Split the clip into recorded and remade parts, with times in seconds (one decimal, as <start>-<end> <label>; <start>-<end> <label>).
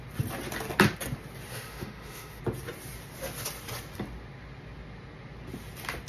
0.0-1.5 recorded; 1.5-2.4 remade; 2.4-6.1 recorded